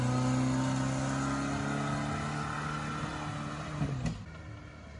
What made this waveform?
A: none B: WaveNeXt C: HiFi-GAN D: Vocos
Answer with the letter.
A